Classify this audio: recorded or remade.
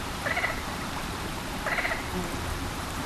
remade